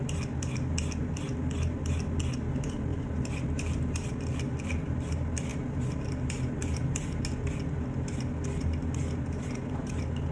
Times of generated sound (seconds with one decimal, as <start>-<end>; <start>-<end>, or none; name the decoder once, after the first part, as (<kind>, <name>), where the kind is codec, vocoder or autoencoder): 2.9-4.1 (vocoder, BigVGAN v2); 5.5-7.2

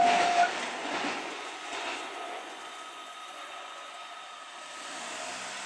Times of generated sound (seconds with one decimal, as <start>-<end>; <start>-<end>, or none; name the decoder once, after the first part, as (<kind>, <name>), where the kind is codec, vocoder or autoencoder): 0.8-4.2 (vocoder, Vocos)

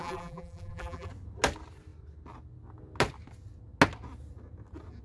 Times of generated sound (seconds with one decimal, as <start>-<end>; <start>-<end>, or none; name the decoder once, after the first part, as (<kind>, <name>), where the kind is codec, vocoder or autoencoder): 0.0-1.1 (vocoder, BigVGAN v2)

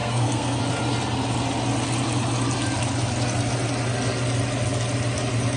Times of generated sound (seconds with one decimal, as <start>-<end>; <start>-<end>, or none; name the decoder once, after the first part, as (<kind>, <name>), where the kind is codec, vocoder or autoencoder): 0.0-0.6 (codec, SNAC)

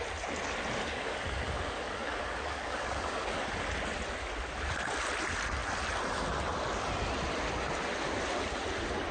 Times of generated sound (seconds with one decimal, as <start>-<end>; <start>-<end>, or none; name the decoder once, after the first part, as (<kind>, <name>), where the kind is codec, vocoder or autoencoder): 0.9-3.4 (codec, DAC)

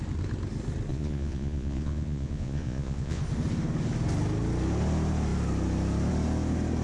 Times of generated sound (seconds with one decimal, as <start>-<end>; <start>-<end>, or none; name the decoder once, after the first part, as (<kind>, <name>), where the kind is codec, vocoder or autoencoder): 0.9-3.2 (vocoder, Vocos)

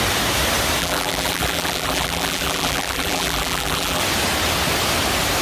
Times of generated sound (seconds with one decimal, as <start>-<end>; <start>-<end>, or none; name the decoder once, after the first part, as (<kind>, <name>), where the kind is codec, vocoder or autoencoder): 0.8-4.0 (vocoder, BigVGAN v2)

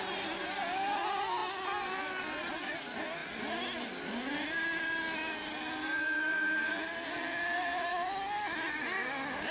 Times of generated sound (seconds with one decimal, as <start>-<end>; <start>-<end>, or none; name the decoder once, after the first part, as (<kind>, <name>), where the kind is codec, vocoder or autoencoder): none